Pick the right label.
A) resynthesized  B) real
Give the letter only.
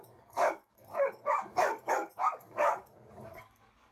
A